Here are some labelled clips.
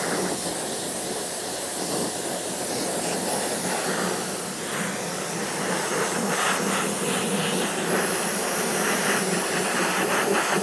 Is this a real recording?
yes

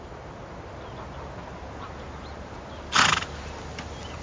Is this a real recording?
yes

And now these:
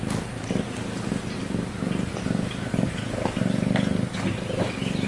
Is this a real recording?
yes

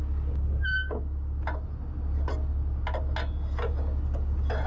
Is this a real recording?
yes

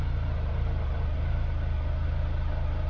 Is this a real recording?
yes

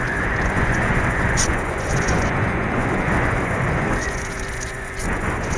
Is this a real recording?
no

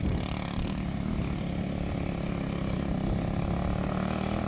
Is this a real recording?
yes